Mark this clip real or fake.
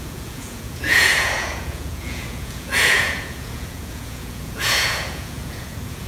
fake